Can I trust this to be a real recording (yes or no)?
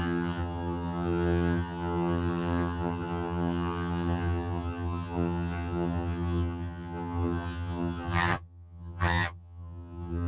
no